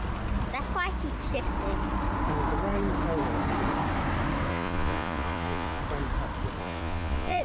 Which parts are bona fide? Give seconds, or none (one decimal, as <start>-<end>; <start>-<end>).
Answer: 0.0-4.5; 5.8-6.6